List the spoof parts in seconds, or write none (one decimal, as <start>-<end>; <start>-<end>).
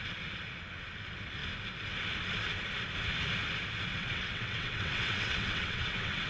3.9-6.3